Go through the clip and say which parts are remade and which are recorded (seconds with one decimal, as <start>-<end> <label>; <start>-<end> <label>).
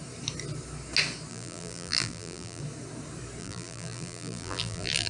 0.0-1.3 recorded; 1.3-2.6 remade; 2.6-3.4 recorded; 3.4-5.1 remade